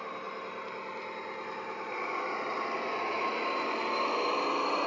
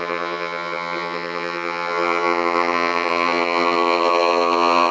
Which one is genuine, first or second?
first